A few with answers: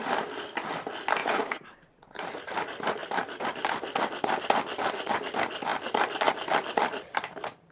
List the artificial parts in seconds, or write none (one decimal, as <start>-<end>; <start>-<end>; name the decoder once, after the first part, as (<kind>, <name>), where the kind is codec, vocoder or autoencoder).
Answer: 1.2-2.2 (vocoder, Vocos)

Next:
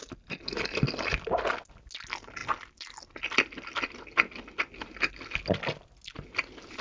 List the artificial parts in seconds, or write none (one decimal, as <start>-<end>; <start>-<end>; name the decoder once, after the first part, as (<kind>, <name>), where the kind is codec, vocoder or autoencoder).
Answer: none

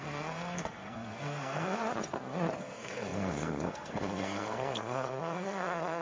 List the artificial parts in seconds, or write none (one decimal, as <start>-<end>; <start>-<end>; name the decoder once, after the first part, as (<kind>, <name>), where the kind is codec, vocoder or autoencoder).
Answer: 0.0-1.8 (codec, SNAC); 2.6-6.0